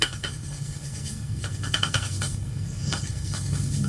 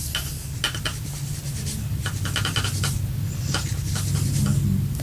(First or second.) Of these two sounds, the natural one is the second